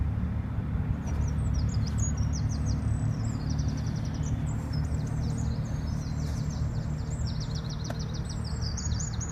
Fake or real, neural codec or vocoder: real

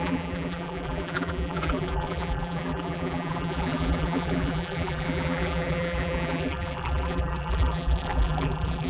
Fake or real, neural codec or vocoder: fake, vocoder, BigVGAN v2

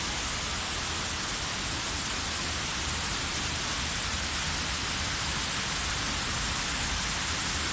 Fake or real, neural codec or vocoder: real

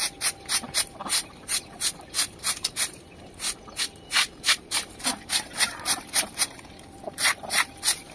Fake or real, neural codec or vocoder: fake, vocoder, BigVGAN v2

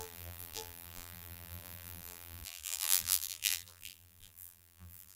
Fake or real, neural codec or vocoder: fake, vocoder, BigVGAN v2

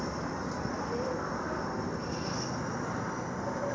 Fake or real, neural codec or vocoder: real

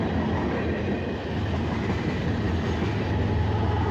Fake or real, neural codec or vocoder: real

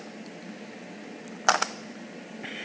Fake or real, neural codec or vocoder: real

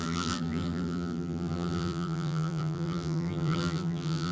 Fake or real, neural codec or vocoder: fake, vocoder, BigVGAN v2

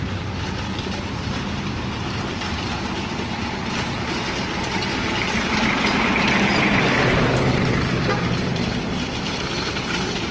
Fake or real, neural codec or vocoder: fake, vocoder, BigVGAN v2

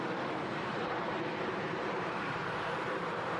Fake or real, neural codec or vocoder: fake, vocoder, BigVGAN v2